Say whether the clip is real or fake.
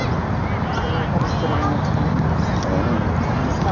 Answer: real